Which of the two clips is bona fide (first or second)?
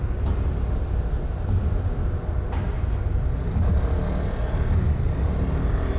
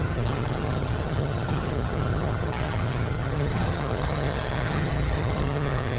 first